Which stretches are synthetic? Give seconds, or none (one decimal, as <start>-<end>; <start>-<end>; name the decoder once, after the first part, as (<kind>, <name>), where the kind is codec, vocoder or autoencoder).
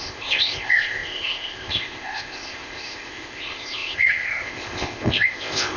0.0-5.8 (codec, ZipCodec)